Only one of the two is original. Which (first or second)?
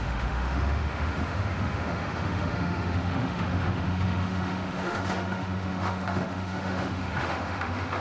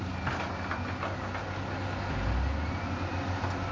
second